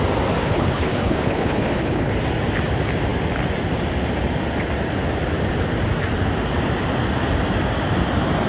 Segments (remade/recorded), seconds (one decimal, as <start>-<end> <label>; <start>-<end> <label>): 0.0-0.4 recorded; 0.4-2.1 remade; 2.1-8.5 recorded